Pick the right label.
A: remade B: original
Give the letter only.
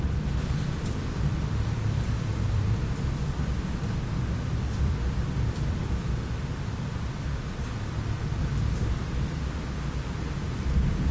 A